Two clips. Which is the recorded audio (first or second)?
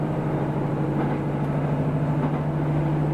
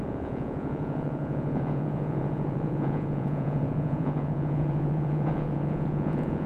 first